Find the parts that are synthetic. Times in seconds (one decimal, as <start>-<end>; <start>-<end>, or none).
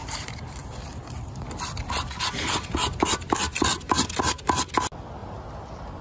none